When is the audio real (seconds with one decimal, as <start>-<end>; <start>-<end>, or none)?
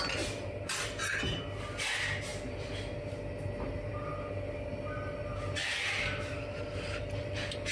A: 0.0-7.7